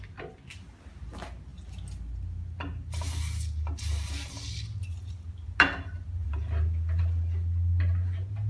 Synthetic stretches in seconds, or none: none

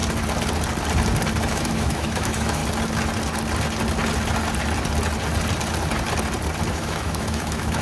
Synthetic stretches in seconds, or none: 1.5-2.6 (autoencoder, DAC-VAE); 6.7-7.8

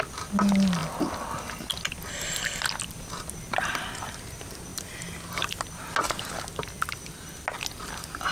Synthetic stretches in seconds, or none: none

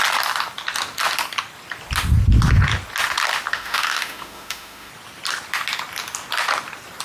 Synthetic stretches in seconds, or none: 3.5-4.9 (autoencoder, DAC-VAE)